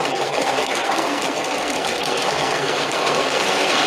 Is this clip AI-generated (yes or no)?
yes